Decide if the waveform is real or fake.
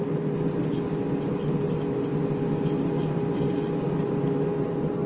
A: real